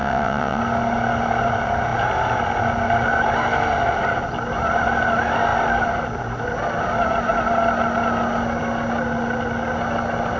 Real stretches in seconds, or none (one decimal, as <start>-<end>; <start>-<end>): 0.6-10.4